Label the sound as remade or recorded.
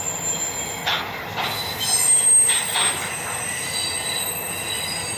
recorded